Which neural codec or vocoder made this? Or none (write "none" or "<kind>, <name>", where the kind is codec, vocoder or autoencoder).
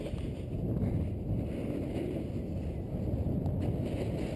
none